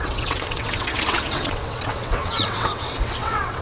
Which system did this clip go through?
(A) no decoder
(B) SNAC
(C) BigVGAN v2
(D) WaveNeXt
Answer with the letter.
D